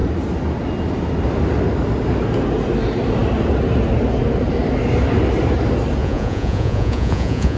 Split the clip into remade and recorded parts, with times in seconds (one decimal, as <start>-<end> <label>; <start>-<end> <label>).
0.0-6.0 recorded; 6.0-7.6 remade